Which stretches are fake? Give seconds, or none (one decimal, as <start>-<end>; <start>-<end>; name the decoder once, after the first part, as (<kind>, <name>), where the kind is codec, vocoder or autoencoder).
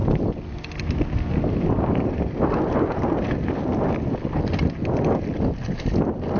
none